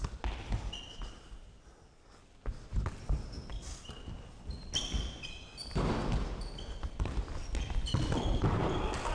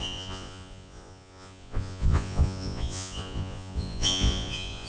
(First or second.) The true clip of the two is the first